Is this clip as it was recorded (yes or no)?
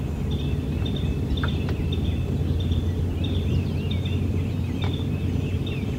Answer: yes